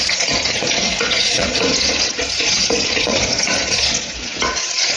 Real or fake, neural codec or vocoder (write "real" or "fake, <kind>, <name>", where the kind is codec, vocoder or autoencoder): fake, vocoder, Vocos